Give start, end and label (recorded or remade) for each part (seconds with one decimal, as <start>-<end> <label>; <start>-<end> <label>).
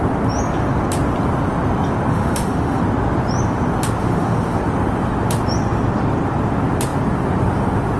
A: 0.0-2.1 recorded; 2.1-2.8 remade; 2.8-4.0 recorded; 4.0-4.6 remade; 4.6-8.0 recorded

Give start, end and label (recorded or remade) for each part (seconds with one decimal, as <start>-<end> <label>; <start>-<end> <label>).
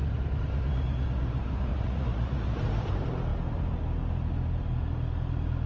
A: 0.0-1.7 recorded; 1.7-2.6 remade; 2.6-5.7 recorded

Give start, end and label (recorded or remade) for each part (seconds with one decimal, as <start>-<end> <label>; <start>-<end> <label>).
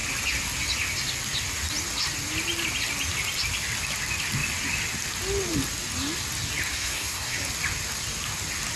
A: 0.0-6.7 recorded; 6.7-7.4 remade; 7.4-8.8 recorded